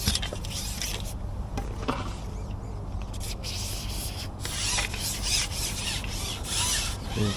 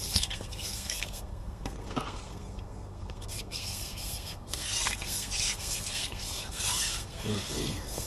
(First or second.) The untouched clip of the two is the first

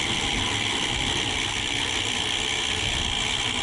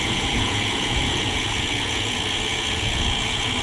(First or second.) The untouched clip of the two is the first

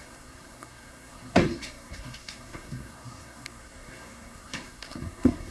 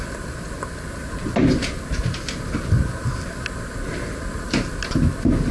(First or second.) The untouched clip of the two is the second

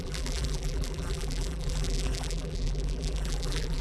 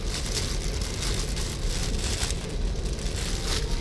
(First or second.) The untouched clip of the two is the second